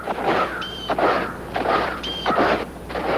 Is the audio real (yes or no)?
no